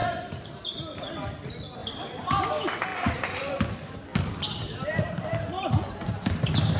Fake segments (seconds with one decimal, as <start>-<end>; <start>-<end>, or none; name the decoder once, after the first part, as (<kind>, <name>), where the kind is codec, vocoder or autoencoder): 1.8-2.3 (vocoder, BigVGAN v2); 2.9-3.5; 4.1-6.8

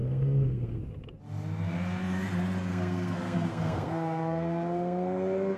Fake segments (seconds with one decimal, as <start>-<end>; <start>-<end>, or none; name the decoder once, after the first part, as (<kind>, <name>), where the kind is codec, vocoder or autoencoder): 0.0-0.8 (codec, SNAC); 2.7-5.6

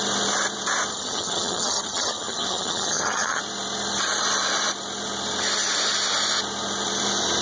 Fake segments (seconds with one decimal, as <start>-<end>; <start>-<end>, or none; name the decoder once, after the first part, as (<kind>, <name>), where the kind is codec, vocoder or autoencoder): 0.9-3.4 (vocoder, HiFi-GAN)

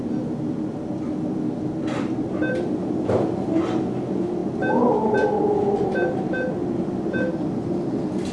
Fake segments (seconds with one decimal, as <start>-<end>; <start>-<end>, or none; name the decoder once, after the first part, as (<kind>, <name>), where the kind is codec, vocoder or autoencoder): none

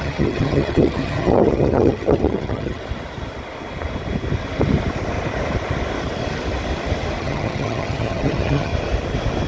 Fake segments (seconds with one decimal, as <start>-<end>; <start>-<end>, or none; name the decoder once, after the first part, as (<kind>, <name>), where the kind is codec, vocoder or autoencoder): 0.0-2.8 (vocoder, HiFi-GAN); 7.2-8.7

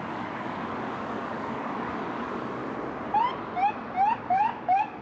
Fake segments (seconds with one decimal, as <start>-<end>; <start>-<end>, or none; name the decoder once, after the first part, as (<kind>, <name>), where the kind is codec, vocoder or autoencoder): 0.0-2.6 (codec, DAC); 4.2-5.0

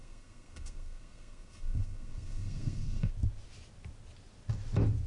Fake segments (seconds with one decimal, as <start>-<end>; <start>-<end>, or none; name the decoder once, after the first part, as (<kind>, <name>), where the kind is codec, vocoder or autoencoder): 0.0-3.1 (codec, SNAC)